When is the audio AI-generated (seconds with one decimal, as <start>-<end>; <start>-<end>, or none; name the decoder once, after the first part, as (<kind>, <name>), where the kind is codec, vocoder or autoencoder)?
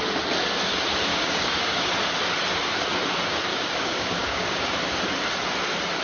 1.1-1.9 (codec, DAC); 3.5-4.7